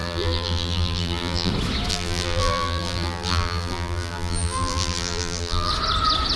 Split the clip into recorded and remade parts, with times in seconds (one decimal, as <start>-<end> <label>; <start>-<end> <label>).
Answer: 0.0-1.5 remade; 1.5-1.9 recorded; 1.9-5.7 remade; 5.7-6.4 recorded